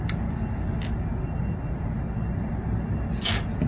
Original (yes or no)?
yes